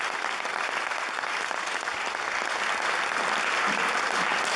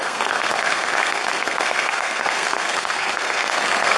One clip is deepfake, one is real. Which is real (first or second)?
first